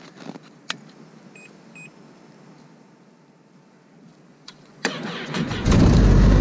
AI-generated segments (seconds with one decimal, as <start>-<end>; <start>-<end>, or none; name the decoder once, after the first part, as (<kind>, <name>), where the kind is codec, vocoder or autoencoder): 4.3-5.8 (vocoder, Vocos)